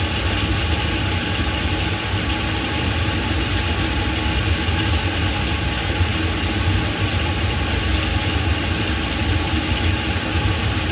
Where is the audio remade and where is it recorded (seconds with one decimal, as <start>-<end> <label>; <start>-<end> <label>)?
0.0-10.9 recorded